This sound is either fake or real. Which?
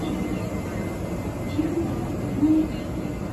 real